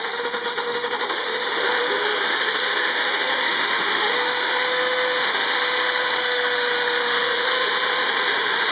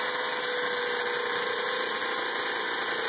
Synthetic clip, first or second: first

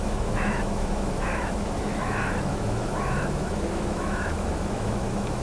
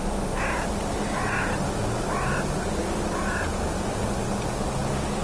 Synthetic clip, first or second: first